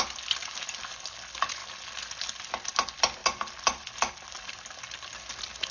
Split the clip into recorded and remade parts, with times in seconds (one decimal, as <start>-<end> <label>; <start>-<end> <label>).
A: 0.0-5.7 recorded